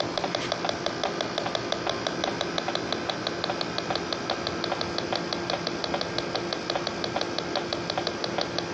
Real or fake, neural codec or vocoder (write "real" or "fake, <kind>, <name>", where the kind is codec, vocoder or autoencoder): real